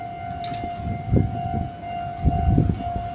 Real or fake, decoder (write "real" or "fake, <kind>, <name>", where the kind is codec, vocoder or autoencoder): real